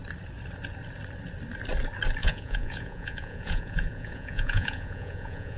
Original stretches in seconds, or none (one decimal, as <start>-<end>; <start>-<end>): 0.0-2.2